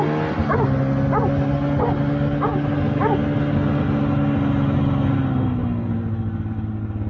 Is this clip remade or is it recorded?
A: recorded